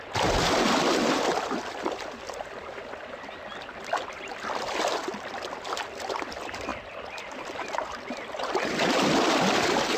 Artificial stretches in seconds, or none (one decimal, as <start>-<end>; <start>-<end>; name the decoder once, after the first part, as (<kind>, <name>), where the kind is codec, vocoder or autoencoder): none